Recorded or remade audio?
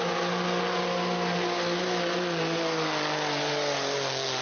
recorded